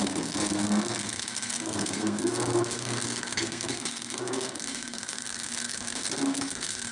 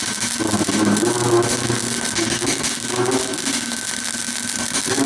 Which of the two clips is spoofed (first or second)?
first